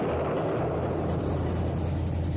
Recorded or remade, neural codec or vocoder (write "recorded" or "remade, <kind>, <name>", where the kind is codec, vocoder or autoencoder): recorded